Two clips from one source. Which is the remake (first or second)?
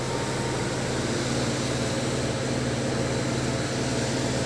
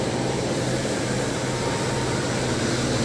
second